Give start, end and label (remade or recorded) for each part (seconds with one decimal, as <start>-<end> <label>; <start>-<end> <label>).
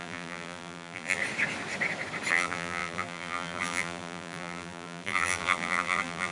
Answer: 0.0-1.2 remade; 1.2-2.3 recorded; 2.3-6.3 remade